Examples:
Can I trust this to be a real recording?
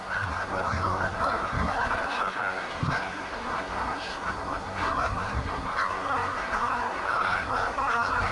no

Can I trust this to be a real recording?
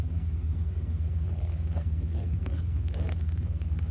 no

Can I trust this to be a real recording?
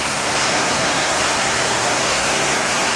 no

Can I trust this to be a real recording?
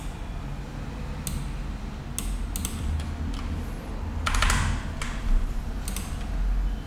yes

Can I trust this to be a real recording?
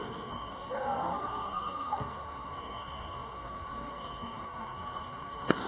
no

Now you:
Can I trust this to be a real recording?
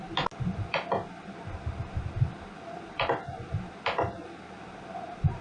yes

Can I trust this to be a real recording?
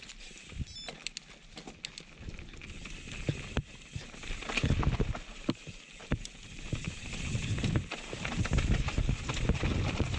yes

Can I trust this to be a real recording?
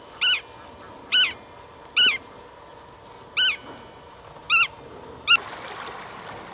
yes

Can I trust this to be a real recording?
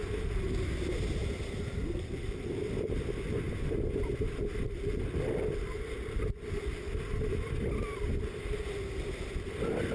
yes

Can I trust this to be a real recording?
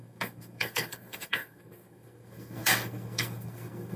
no